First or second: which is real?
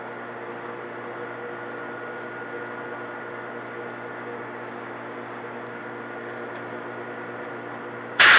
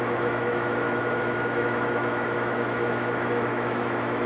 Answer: first